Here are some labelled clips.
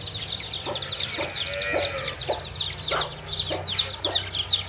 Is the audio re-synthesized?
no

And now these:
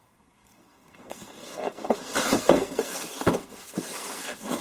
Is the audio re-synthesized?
yes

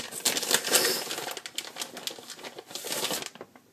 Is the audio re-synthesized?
no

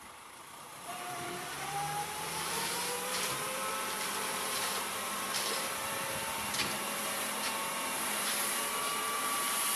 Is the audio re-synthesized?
yes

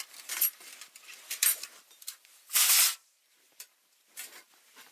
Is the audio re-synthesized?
yes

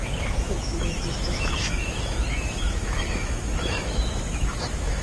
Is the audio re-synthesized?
yes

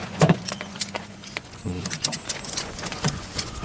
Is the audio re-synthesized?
yes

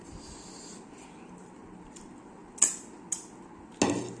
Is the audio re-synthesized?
no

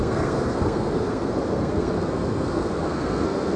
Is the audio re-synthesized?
yes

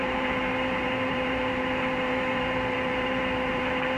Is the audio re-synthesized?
yes